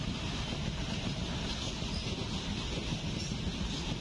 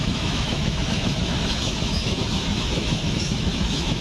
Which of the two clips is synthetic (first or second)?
second